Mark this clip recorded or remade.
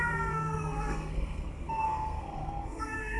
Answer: remade